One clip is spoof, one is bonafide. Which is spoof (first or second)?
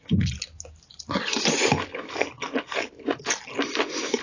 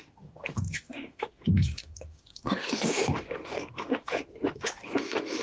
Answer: second